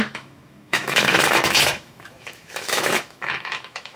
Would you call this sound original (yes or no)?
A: no